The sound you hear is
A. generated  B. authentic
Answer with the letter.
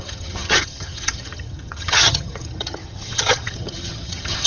A